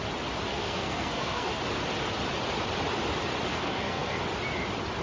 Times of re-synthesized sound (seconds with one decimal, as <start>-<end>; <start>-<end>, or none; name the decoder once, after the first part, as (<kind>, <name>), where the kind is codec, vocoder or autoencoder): 0.5-1.6 (codec, SNAC); 3.5-4.2